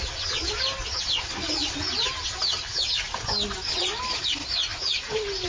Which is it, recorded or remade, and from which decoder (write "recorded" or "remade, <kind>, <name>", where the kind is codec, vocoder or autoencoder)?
recorded